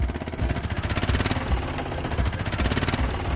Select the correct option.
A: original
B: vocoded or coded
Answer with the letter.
A